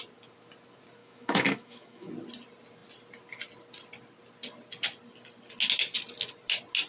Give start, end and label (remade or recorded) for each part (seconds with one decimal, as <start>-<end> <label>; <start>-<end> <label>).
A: 0.0-1.0 recorded; 1.0-2.1 remade; 2.1-6.9 recorded